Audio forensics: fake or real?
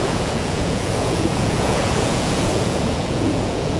fake